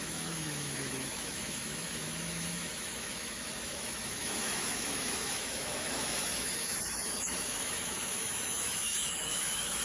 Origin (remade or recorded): remade